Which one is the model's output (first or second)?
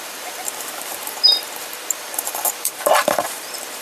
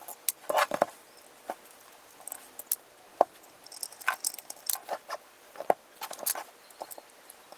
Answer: first